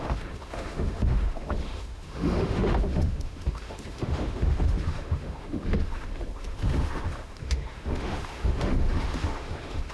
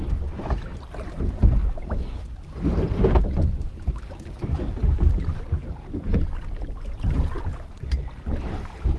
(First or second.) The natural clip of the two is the second